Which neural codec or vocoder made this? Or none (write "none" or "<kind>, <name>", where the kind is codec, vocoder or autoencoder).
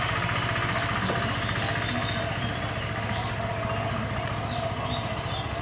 none